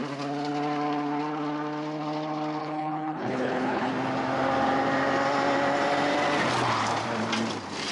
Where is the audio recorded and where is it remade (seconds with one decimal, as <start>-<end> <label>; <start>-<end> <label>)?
0.0-2.6 recorded; 2.6-3.9 remade; 3.9-7.9 recorded